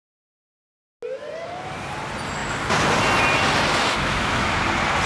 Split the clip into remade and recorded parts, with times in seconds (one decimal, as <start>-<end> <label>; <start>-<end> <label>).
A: 0.0-3.7 recorded; 3.7-4.5 remade; 4.5-5.1 recorded